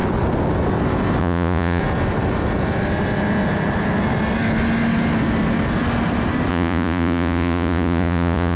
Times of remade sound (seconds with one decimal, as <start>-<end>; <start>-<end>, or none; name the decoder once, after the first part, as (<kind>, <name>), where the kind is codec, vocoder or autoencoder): 1.2-1.8 (vocoder, Vocos); 6.5-8.6